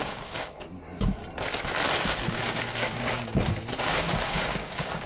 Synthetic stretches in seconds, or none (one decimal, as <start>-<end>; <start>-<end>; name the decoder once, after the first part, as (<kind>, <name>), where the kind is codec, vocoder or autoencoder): 0.0-1.2 (codec, DAC); 2.3-3.3; 3.8-5.1